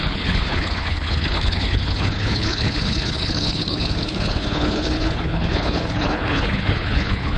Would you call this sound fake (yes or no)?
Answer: yes